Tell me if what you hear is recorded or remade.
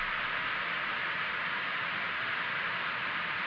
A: remade